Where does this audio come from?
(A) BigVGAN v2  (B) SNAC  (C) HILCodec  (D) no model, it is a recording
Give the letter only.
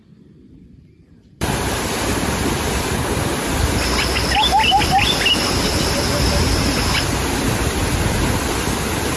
A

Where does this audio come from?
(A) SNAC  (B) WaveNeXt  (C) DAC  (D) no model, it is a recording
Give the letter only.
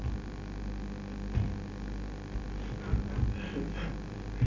D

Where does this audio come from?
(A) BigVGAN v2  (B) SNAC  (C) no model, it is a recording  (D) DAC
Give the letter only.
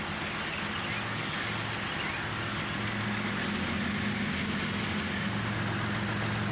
C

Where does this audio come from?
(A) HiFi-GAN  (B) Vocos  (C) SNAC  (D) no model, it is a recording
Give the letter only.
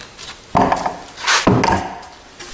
D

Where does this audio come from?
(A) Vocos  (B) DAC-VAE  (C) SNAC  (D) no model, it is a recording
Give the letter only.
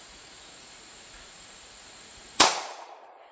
A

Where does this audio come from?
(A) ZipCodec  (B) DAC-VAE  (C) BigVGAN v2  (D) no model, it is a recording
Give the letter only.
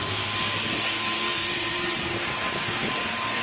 D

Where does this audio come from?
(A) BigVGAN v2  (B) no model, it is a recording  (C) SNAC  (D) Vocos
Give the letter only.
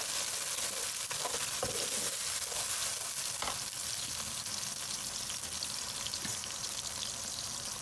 B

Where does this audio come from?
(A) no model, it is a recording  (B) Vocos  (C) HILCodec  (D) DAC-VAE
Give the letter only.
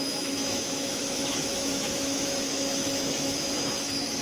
D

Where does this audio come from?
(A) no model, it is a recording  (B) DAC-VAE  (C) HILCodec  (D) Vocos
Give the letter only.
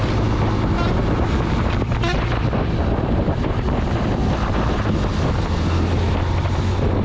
A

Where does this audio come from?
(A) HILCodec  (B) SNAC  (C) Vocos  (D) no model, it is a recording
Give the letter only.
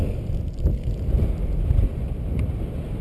D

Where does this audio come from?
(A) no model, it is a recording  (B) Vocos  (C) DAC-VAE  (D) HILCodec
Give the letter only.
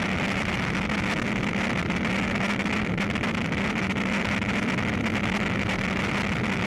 A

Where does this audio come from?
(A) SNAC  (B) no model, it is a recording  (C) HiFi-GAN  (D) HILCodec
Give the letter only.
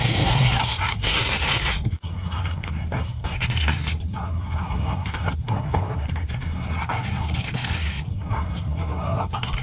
A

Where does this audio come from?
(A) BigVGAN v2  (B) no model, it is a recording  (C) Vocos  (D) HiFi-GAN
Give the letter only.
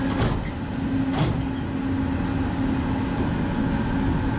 B